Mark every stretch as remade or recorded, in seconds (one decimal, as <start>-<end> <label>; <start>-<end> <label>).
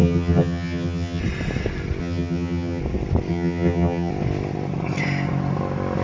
0.0-1.2 remade; 1.2-2.0 recorded; 2.0-2.8 remade; 2.8-3.3 recorded; 3.3-4.1 remade; 4.1-6.0 recorded